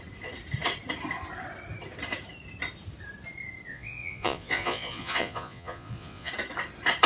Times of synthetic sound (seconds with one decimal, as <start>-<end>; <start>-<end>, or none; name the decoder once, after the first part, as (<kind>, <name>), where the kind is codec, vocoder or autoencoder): 3.7-6.3 (vocoder, Vocos)